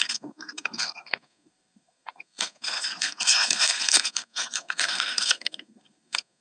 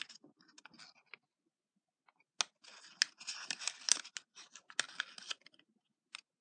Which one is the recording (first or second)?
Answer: second